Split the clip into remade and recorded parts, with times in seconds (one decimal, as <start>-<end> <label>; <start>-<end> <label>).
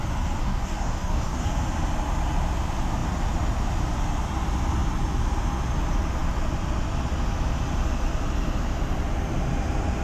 0.0-0.4 recorded; 0.4-1.5 remade; 1.5-10.0 recorded